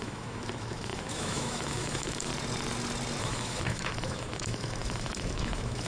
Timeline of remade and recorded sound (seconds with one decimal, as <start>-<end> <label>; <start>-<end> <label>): 0.0-2.3 remade; 2.3-3.2 recorded; 3.2-5.9 remade